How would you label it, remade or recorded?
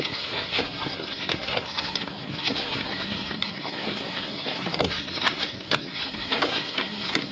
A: remade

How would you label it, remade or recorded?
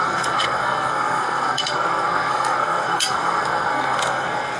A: remade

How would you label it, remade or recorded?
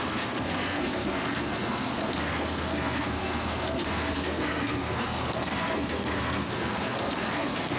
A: remade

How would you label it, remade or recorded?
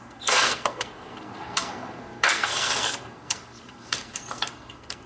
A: remade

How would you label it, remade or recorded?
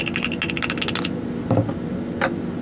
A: recorded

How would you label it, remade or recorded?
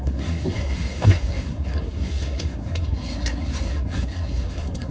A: remade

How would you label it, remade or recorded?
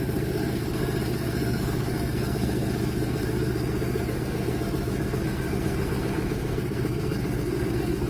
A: remade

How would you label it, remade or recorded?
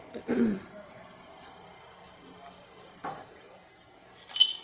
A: recorded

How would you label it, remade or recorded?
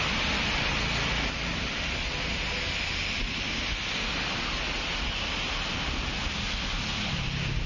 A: recorded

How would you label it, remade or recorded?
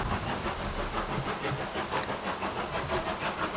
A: recorded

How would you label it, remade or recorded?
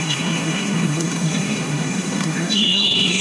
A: remade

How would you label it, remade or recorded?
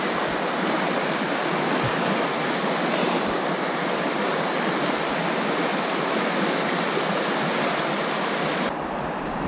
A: recorded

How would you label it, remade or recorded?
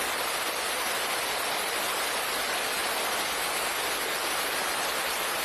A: recorded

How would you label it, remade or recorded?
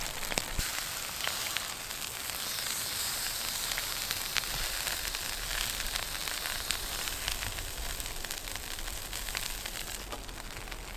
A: recorded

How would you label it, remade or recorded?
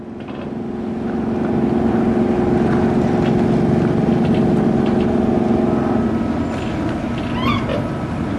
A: recorded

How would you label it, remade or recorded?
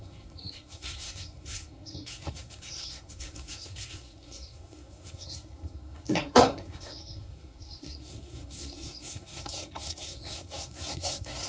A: remade